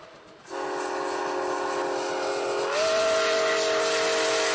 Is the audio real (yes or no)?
yes